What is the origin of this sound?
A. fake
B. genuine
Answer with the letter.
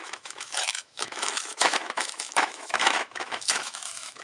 A